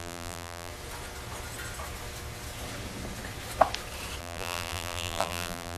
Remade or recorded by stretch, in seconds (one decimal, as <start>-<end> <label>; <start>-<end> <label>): 0.0-0.7 remade; 0.7-4.2 recorded; 4.2-5.8 remade